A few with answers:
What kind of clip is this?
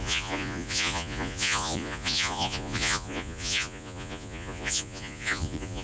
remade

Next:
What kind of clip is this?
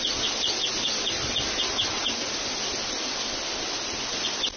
recorded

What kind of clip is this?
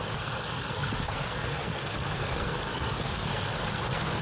remade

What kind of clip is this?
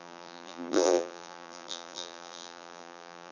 remade